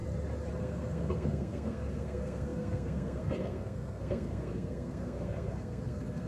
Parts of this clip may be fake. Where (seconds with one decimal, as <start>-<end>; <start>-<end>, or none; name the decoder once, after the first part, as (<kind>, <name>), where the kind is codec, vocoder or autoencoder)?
0.6-6.3 (codec, SNAC)